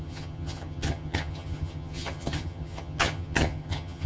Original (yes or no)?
no